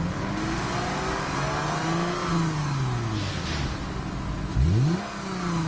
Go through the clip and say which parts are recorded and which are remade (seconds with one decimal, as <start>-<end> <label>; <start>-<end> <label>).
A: 0.0-5.7 recorded